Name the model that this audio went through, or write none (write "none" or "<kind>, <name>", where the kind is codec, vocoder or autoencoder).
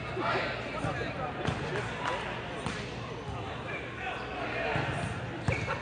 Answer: none